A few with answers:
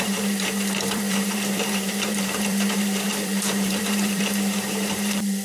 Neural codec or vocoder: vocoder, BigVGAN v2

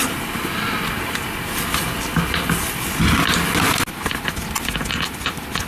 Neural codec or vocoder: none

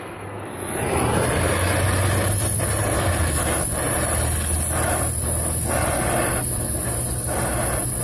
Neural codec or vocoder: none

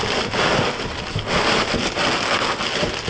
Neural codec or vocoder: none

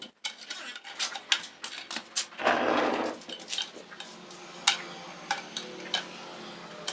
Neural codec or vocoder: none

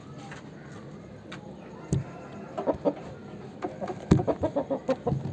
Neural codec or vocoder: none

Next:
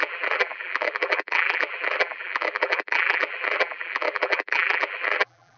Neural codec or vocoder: vocoder, BigVGAN v2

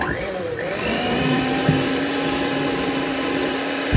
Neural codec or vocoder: vocoder, BigVGAN v2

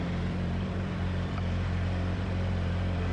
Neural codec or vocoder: vocoder, BigVGAN v2